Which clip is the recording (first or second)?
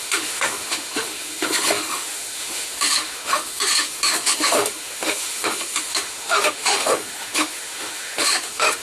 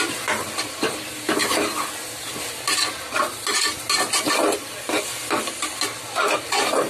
second